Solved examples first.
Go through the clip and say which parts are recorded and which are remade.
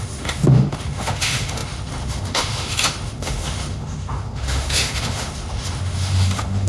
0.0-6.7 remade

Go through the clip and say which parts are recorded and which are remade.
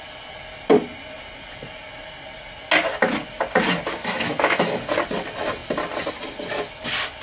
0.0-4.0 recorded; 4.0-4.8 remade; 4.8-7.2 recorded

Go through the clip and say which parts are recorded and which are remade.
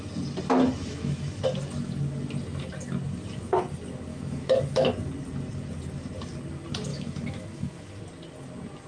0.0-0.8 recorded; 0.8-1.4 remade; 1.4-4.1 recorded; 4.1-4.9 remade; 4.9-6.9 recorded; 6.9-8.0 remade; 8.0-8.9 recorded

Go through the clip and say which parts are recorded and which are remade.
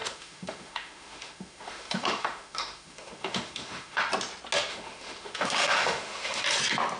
0.0-4.0 remade; 4.0-4.7 recorded; 4.7-6.4 remade; 6.4-7.0 recorded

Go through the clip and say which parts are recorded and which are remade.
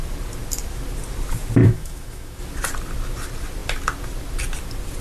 0.0-1.6 recorded; 1.6-2.4 remade; 2.4-5.0 recorded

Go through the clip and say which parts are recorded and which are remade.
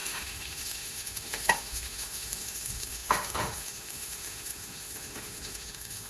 0.0-6.1 remade